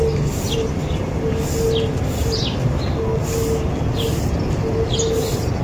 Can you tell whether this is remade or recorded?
recorded